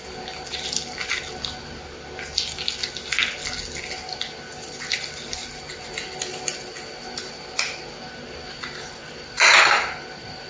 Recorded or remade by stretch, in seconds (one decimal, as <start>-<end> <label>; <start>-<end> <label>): 0.0-10.5 recorded